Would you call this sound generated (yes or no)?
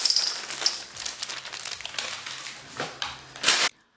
no